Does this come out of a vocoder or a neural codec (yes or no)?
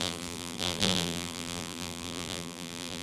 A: yes